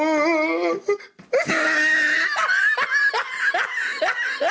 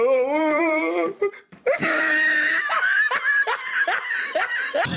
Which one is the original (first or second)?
first